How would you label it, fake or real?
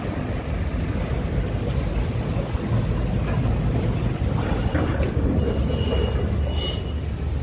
real